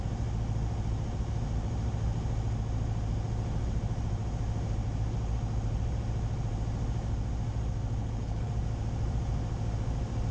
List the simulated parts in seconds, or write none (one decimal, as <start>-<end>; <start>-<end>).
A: 8.0-8.5